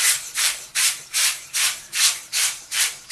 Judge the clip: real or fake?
fake